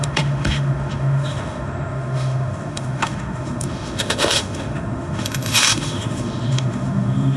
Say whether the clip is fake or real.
fake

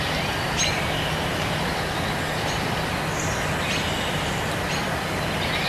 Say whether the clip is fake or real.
real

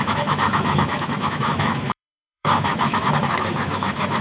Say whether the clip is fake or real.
fake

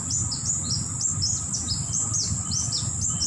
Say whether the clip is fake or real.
real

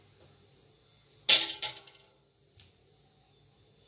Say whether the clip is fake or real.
real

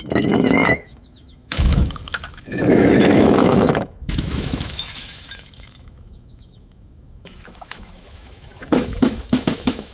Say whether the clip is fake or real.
fake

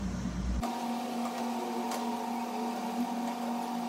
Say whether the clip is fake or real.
real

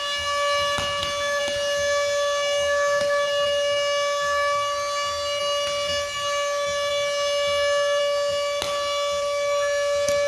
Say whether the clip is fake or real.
real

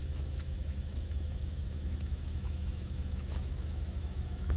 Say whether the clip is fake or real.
fake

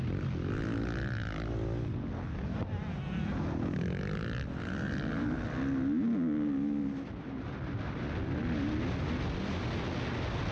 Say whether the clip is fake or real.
real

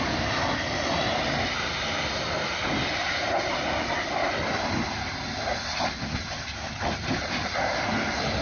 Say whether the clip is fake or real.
real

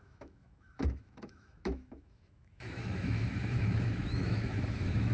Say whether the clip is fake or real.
fake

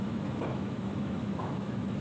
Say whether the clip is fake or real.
fake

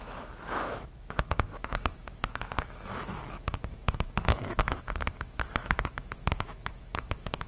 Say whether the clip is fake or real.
fake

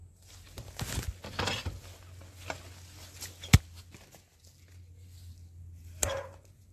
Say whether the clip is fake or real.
real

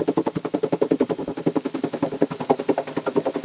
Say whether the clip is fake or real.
real